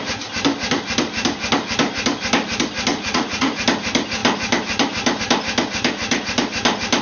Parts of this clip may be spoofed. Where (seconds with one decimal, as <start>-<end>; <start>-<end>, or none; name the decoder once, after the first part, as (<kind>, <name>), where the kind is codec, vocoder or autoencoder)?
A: 2.9-3.6 (vocoder, Vocos)